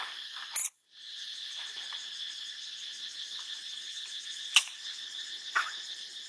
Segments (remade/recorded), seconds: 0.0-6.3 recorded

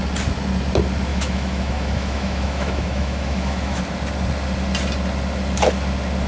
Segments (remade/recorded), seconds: 0.0-1.1 recorded; 1.1-3.8 remade; 3.8-6.3 recorded

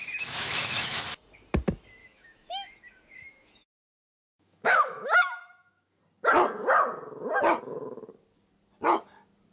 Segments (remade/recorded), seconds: 0.0-1.0 remade; 1.0-2.0 recorded; 2.0-6.0 remade; 6.0-9.5 recorded